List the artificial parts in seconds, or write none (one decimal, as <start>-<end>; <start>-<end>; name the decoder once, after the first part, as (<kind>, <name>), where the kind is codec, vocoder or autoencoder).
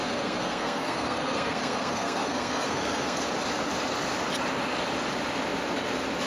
0.0-3.2 (codec, SNAC)